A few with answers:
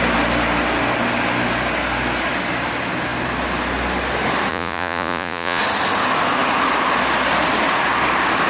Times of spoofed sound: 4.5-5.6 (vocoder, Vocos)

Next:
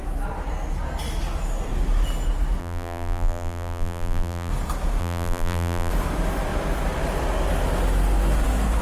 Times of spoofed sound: 2.6-4.5 (vocoder, BigVGAN v2); 5.0-5.9

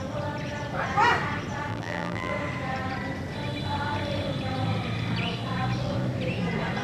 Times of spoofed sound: 1.7-2.3 (vocoder, BigVGAN v2)

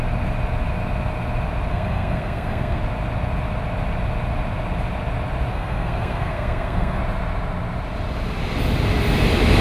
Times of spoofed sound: 1.7-2.8 (codec, SNAC); 5.5-7.0

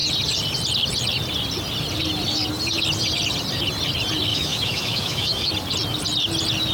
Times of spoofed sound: 4.3-5.5 (autoencoder, DAC-VAE)

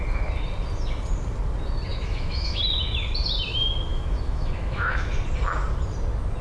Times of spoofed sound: 1.9-2.6 (autoencoder, DAC-VAE); 3.9-5.1

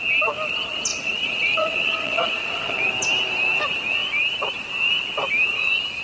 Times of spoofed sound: 0.9-2.8 (vocoder, WaveNeXt)

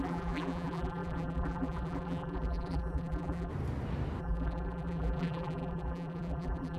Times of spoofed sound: 0.0-3.5 (vocoder, BigVGAN v2); 4.2-6.8